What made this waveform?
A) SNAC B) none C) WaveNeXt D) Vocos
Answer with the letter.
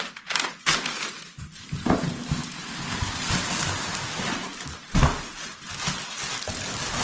B